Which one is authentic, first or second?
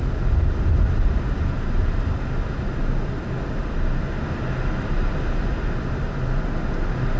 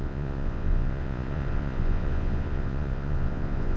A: first